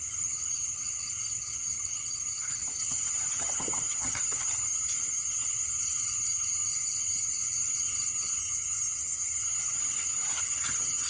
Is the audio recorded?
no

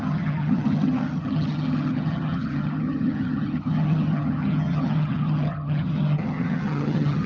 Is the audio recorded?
no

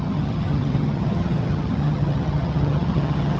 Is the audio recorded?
no